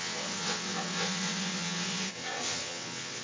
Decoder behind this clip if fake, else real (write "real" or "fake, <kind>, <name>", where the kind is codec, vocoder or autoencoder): fake, vocoder, WaveNeXt